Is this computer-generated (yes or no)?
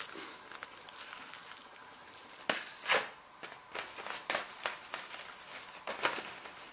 no